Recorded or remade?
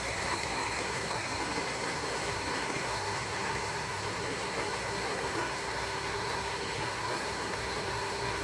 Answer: remade